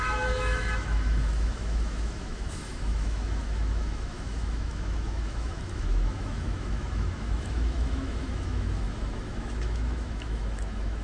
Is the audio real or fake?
fake